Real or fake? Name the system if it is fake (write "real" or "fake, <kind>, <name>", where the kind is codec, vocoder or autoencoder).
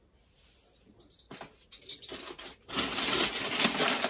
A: real